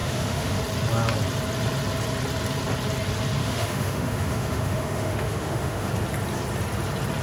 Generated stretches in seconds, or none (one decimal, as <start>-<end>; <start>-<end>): 0.0-0.6; 3.4-5.9